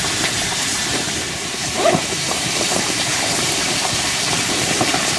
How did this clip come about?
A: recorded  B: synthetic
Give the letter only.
B